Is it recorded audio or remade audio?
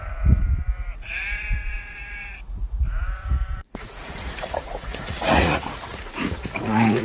remade